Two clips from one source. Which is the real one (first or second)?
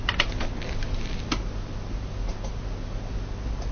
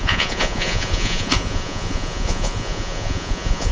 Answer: first